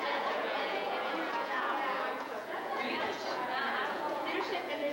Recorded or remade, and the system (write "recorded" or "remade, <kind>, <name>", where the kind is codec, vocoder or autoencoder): remade, vocoder, Vocos